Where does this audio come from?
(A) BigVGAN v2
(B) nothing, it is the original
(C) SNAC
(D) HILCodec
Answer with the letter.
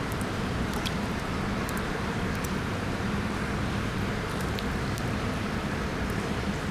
A